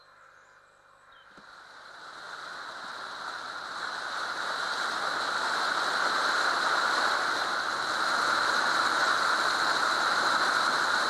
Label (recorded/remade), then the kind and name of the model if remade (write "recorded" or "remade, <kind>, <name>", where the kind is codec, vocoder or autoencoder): recorded